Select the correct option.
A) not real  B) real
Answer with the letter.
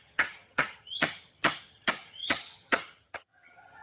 A